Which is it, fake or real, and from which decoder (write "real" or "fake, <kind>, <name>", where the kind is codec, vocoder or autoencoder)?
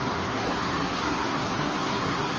fake, codec, SNAC